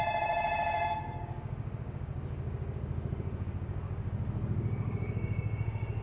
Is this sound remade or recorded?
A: remade